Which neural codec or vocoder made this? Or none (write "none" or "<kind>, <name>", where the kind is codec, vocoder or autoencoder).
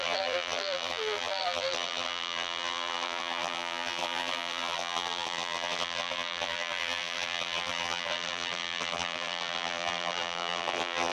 vocoder, BigVGAN v2